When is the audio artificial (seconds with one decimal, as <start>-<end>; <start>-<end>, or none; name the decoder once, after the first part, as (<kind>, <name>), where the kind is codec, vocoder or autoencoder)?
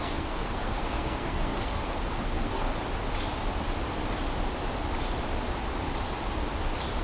0.0-2.7 (codec, SNAC)